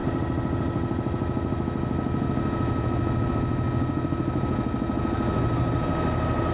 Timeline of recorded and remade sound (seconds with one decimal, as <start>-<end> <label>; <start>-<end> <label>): 0.0-6.5 recorded